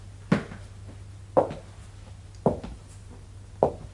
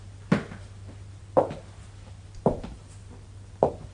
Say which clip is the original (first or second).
first